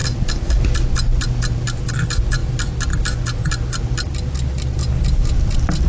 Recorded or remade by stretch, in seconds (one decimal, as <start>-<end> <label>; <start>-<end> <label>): 0.0-5.9 recorded